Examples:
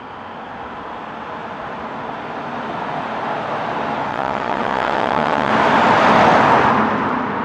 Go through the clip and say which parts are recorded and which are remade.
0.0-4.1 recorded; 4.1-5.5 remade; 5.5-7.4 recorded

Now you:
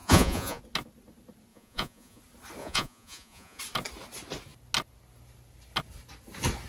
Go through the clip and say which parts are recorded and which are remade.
0.0-0.6 remade; 0.6-1.5 recorded; 1.5-2.2 remade; 2.2-2.6 recorded; 2.6-3.6 remade; 3.6-6.7 recorded

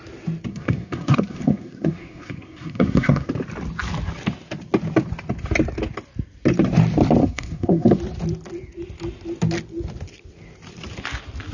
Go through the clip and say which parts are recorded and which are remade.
0.0-0.5 recorded; 0.5-3.3 remade; 3.3-7.2 recorded; 7.2-8.0 remade; 8.0-11.5 recorded

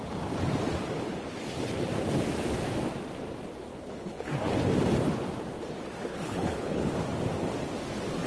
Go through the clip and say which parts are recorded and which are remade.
0.0-3.7 recorded; 3.7-4.3 remade; 4.3-6.1 recorded; 6.1-6.9 remade; 6.9-8.3 recorded

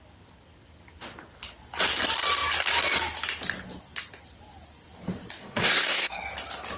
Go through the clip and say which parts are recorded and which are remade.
0.0-5.4 recorded; 5.4-6.2 remade; 6.2-6.8 recorded

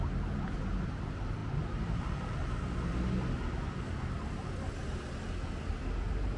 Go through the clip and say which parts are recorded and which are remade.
0.0-6.4 recorded

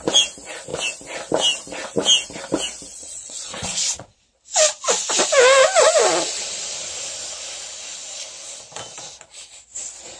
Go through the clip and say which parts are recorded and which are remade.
0.0-2.9 recorded; 2.9-4.2 remade; 4.2-10.2 recorded

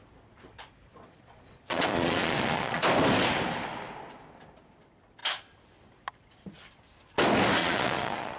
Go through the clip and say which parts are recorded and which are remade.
0.0-0.9 recorded; 0.9-2.8 remade; 2.8-7.6 recorded; 7.6-8.4 remade